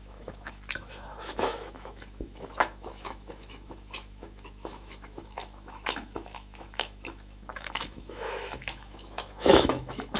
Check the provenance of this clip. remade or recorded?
remade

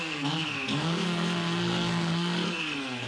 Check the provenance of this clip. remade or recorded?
remade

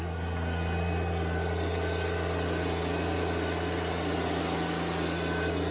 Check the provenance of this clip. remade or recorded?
recorded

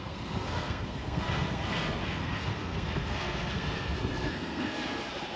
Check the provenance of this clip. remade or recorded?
remade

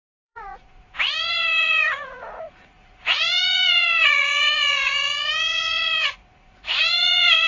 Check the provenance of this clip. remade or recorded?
remade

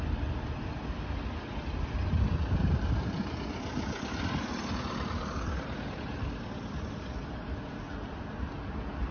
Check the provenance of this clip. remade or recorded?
recorded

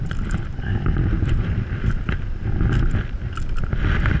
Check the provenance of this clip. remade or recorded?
recorded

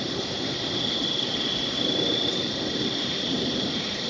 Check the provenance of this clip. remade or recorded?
recorded